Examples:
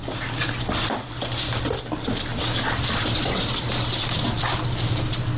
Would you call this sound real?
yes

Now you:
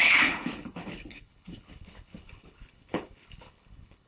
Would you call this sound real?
no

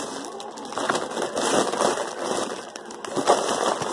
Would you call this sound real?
yes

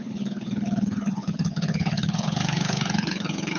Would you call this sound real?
no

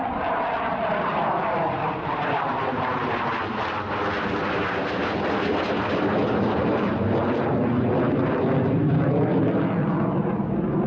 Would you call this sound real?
yes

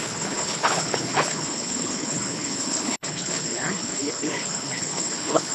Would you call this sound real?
no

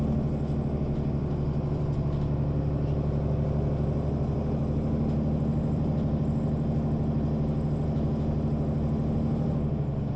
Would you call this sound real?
yes